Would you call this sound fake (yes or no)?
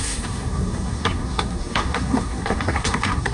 yes